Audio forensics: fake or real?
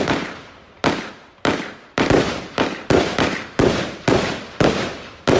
fake